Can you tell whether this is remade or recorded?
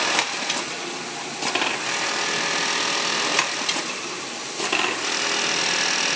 recorded